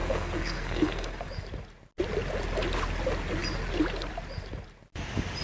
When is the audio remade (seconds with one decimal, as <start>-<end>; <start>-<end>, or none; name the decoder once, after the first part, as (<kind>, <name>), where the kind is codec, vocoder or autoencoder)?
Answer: 0.0-1.3 (codec, SNAC)